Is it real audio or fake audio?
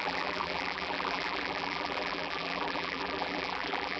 fake